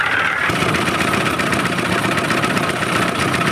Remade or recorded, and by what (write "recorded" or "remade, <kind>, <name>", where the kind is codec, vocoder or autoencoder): recorded